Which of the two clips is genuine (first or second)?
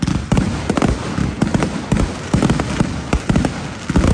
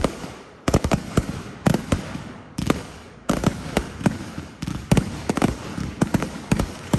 first